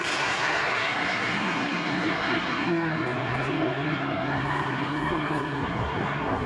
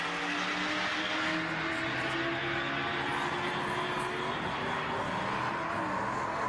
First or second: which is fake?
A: first